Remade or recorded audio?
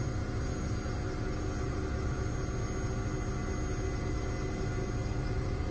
recorded